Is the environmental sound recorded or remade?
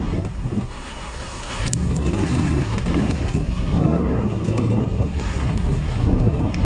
remade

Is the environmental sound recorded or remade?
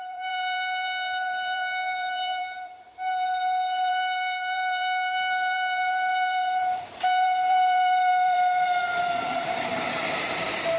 remade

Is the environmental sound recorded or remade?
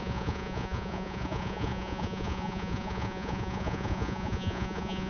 remade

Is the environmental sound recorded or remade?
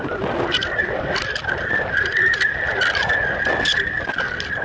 recorded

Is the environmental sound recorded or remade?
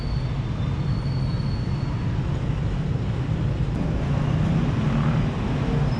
recorded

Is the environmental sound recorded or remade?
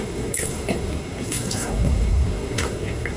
remade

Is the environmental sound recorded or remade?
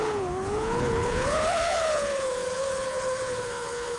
remade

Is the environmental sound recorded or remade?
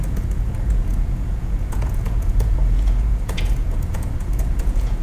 remade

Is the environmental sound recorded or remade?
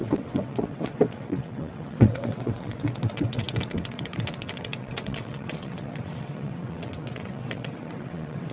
remade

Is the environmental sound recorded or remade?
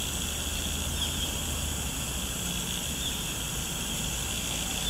recorded